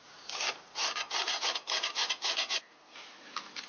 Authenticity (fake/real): real